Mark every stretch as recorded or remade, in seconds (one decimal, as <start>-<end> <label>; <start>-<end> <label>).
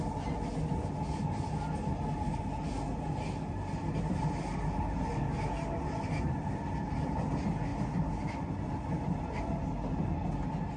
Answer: 0.0-10.8 recorded